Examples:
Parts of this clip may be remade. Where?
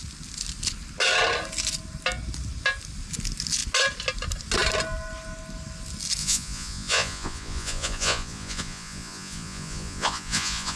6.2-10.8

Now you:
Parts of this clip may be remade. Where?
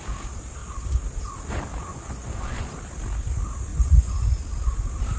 1.9-2.7; 3.7-4.2